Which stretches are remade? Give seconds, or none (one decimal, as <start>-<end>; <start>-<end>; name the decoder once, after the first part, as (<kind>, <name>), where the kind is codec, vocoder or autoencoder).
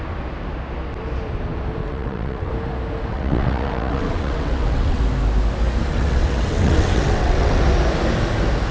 1.8-2.5 (vocoder, WaveNeXt); 3.1-5.0; 5.9-7.6